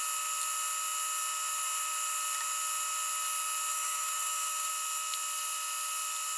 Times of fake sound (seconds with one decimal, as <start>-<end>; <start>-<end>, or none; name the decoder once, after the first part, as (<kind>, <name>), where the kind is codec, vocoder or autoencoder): 3.7-4.7 (autoencoder, DAC-VAE)

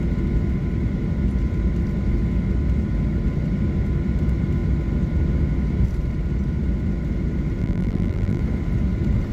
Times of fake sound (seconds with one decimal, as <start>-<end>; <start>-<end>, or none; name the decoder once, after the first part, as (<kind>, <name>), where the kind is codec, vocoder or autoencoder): 7.6-8.4 (vocoder, BigVGAN v2)

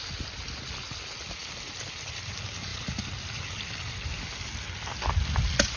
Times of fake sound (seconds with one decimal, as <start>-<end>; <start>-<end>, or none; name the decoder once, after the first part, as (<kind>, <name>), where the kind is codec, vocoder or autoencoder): 1.4-2.3 (vocoder, BigVGAN v2); 2.7-3.9

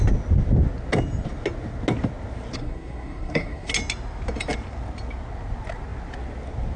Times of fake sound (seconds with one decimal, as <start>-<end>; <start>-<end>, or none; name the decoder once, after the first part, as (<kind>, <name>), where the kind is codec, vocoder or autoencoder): 2.6-3.7 (codec, SNAC)

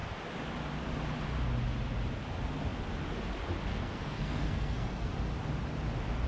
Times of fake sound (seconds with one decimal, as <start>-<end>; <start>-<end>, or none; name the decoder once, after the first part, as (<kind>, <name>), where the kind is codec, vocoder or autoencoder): 3.7-5.1 (codec, SNAC)

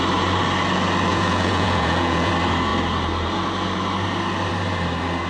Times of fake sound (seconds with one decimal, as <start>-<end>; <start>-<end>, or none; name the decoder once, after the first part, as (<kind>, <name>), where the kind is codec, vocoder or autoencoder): 1.1-2.3 (vocoder, Vocos)